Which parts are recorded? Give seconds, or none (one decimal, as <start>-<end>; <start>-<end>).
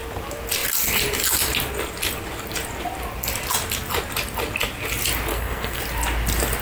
0.0-5.3; 5.8-6.6